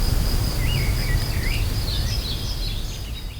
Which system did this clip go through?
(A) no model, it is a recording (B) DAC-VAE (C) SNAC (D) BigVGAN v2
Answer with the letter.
A